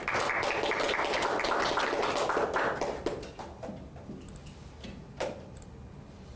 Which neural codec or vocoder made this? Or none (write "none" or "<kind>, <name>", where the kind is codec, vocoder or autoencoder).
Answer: none